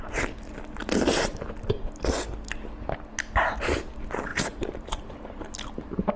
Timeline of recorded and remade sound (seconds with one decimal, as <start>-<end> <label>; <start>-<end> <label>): 0.0-4.3 recorded; 4.3-6.2 remade